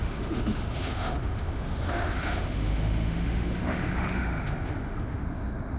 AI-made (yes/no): yes